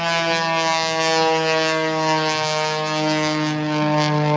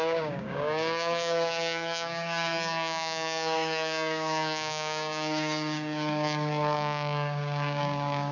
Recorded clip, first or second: first